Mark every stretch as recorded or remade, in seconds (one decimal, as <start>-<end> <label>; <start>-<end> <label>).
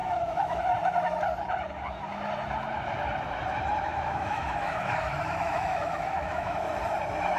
0.0-0.6 remade; 0.6-3.9 recorded; 3.9-6.8 remade; 6.8-7.4 recorded